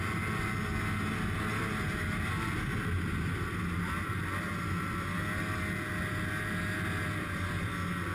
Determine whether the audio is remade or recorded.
recorded